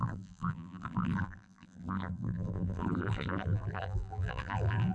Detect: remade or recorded remade